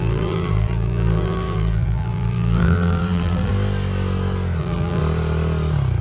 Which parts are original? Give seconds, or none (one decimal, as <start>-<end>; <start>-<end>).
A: 3.5-4.6; 5.0-6.0